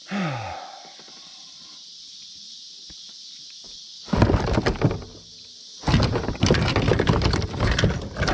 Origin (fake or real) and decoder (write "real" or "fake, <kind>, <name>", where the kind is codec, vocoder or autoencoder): real